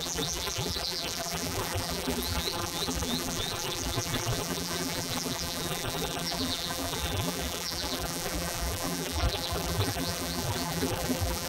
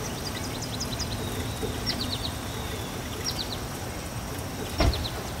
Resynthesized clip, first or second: first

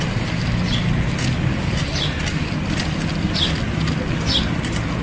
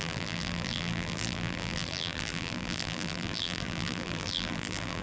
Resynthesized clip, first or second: second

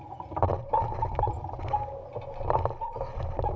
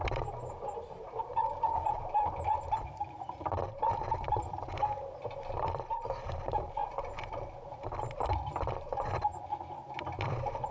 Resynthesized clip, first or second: second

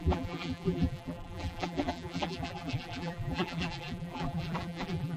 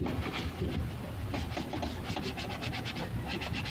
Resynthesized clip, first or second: first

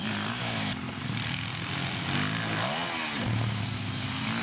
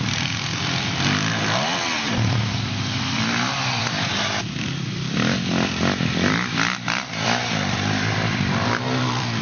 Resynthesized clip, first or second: second